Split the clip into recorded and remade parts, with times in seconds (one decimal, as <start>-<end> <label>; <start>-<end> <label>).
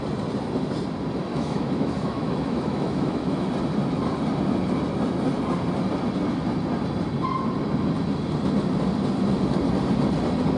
0.0-1.3 recorded; 1.3-3.5 remade; 3.5-10.6 recorded